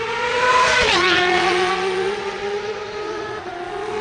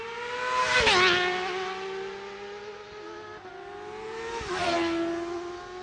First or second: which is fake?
first